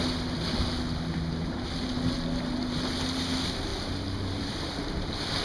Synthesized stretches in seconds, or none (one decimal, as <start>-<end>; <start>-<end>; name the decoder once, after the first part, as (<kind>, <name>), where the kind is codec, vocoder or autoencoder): none